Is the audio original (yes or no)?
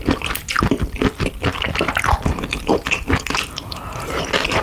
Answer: yes